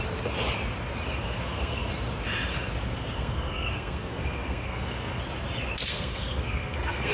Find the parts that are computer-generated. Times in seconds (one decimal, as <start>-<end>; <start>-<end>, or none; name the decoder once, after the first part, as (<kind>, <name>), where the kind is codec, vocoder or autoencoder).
1.2-1.9 (codec, SNAC); 2.9-5.2; 5.9-7.1